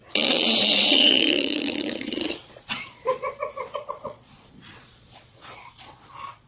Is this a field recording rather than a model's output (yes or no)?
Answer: no